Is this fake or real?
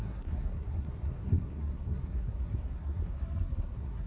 fake